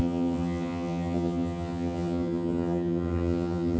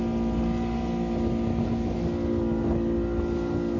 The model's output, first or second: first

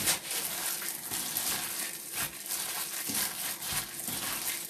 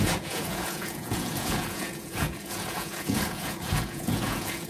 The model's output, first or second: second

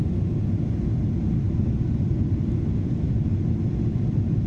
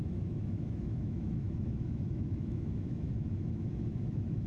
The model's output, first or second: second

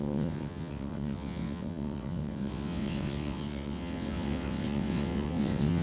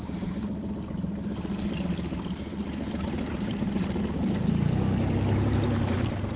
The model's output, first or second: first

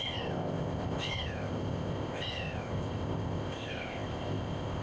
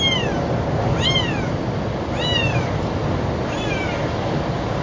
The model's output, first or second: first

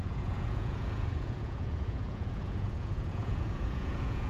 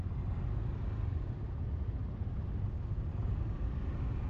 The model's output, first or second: first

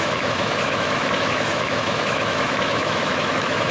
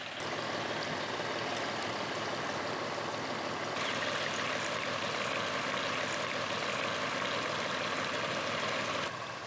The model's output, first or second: first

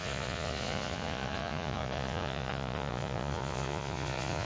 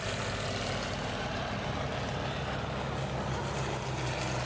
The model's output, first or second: first